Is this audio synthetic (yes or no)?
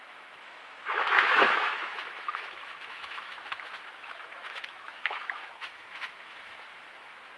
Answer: yes